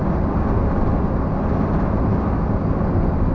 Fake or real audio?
real